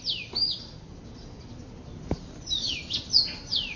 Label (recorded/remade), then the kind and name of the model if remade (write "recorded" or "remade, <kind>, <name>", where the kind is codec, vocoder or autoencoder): recorded